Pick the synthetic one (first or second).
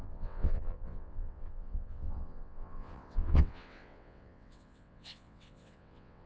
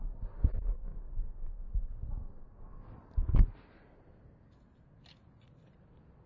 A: first